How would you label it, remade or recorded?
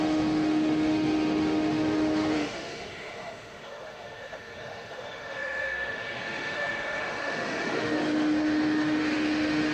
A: remade